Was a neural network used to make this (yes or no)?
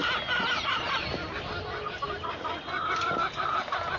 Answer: no